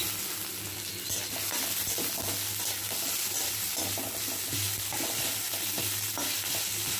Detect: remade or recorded recorded